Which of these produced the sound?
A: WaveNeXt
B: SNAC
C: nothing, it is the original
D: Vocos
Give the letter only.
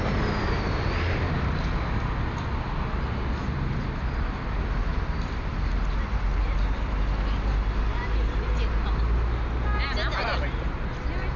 C